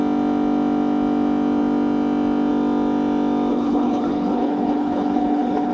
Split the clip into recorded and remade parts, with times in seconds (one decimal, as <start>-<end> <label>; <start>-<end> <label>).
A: 0.0-3.5 recorded; 3.5-5.7 remade